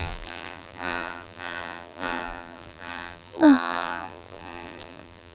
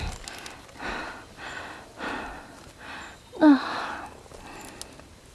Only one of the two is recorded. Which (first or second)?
second